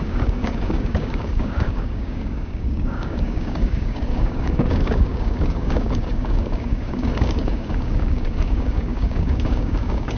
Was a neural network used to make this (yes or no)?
yes